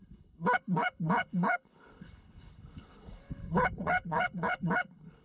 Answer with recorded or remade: remade